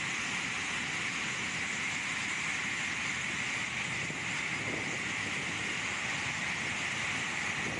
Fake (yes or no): no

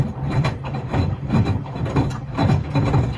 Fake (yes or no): yes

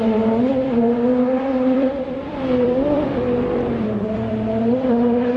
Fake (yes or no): yes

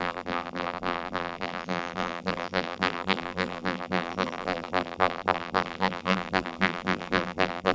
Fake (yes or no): yes